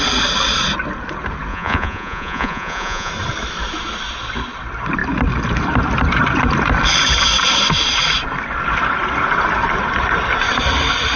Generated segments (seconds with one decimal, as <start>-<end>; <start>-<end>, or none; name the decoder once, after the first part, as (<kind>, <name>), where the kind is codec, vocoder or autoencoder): 1.5-3.1 (vocoder, Vocos)